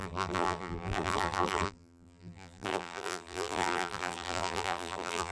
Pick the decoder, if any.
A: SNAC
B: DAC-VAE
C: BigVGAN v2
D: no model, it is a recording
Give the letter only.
C